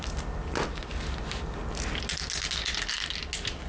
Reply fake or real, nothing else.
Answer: real